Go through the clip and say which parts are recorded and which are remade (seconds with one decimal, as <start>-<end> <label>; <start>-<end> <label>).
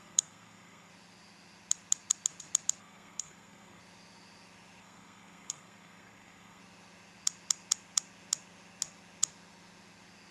0.0-0.9 remade; 0.9-2.8 recorded; 2.8-3.8 remade; 3.8-4.8 recorded; 4.8-6.6 remade; 6.6-10.3 recorded